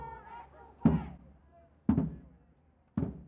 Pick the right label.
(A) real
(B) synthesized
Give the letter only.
A